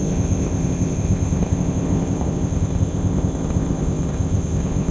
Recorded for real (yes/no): no